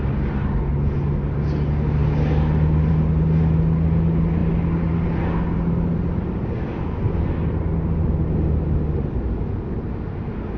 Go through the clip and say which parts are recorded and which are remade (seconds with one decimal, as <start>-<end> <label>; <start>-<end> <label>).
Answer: 0.0-10.6 recorded